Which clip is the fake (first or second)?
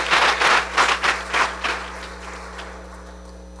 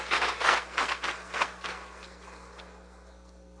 second